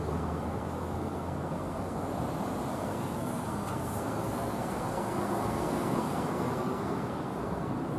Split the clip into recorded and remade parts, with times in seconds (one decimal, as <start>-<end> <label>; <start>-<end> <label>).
0.0-2.1 remade; 2.1-2.7 recorded; 2.7-8.0 remade

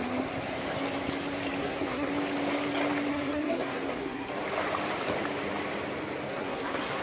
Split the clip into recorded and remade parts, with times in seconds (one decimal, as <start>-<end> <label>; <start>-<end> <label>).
0.0-1.6 recorded; 1.6-2.1 remade; 2.1-3.1 recorded; 3.1-4.3 remade; 4.3-6.3 recorded; 6.3-7.0 remade

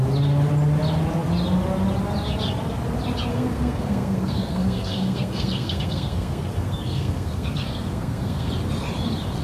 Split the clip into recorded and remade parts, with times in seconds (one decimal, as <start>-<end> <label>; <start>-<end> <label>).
0.0-3.3 recorded; 3.3-8.5 remade; 8.5-9.4 recorded

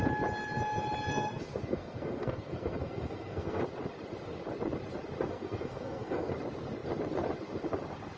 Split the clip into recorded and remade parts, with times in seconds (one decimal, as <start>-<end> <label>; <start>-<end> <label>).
0.0-1.1 recorded; 1.1-3.6 remade; 3.6-5.3 recorded; 5.3-6.3 remade; 6.3-8.2 recorded

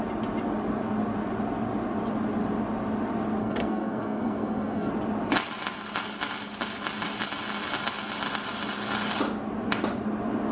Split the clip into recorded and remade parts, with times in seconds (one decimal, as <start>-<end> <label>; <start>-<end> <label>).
0.0-3.4 recorded; 3.4-4.9 remade; 4.9-10.5 recorded